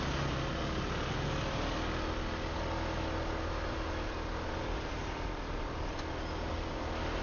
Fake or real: real